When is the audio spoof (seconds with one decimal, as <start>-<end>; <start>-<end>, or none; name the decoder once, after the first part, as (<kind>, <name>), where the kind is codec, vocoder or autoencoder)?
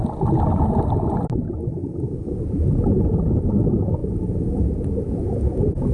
none